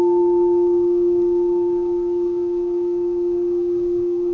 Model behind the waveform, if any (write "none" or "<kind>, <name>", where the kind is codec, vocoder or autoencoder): codec, SNAC